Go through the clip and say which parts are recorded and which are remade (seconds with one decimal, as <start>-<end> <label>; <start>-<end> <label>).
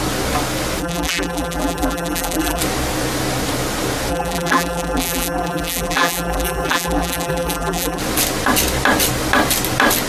0.0-0.8 recorded; 0.8-2.6 remade; 2.6-4.1 recorded; 4.1-8.0 remade; 8.0-10.1 recorded